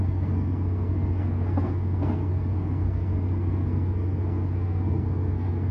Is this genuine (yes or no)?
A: no